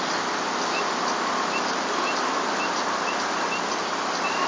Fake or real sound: real